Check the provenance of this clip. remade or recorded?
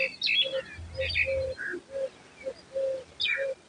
recorded